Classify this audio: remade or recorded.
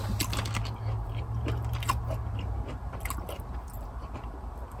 recorded